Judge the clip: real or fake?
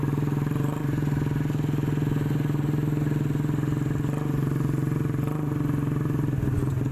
real